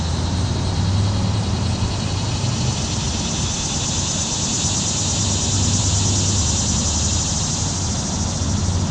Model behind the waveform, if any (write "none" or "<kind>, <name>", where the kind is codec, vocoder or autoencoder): none